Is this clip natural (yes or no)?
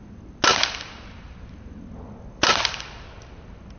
yes